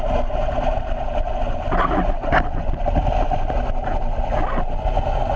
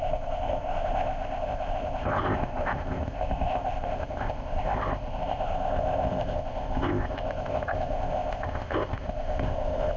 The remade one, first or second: second